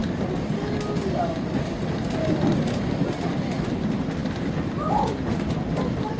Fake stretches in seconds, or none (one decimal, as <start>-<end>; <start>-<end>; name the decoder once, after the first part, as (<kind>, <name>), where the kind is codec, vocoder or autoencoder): none